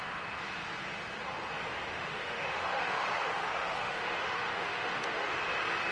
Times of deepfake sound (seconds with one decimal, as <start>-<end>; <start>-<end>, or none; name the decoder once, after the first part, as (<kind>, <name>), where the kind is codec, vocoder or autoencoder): 1.9-5.4 (autoencoder, DAC-VAE)